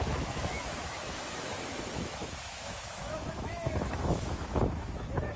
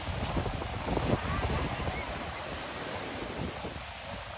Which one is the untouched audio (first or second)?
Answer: second